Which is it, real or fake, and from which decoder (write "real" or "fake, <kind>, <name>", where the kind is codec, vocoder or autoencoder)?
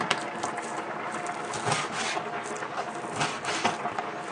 real